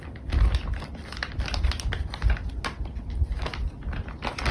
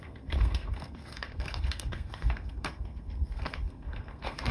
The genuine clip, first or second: first